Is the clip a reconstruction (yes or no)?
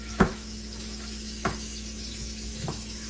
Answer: yes